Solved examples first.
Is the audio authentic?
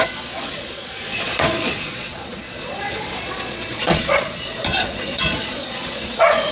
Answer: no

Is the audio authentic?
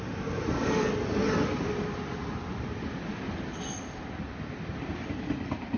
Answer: yes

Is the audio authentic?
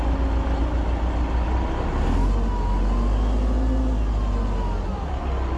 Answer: yes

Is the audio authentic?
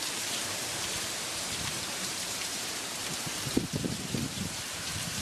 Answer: no